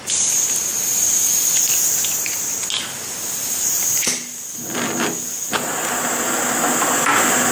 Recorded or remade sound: recorded